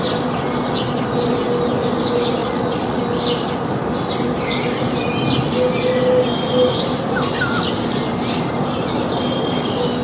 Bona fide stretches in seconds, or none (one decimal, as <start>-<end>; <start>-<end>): 0.0-2.4; 3.0-10.0